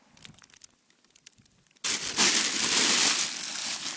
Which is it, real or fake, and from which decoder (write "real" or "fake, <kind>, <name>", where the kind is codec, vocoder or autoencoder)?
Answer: real